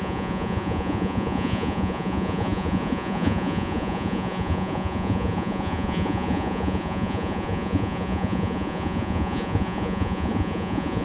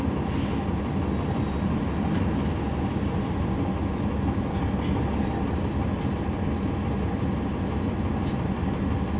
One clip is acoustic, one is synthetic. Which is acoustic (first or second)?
second